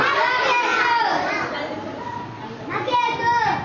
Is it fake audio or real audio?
real